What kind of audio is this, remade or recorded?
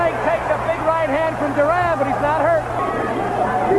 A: recorded